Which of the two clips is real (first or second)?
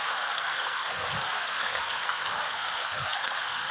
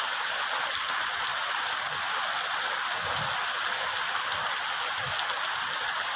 second